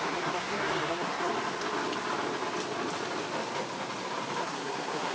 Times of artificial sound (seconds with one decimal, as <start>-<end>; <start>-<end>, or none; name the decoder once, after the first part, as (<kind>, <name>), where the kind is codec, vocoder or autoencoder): 0.0-1.3 (codec, SNAC); 4.4-5.1